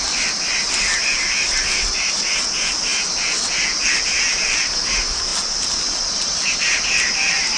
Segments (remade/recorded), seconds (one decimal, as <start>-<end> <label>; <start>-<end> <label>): 0.0-2.9 remade; 2.9-3.9 recorded; 3.9-7.6 remade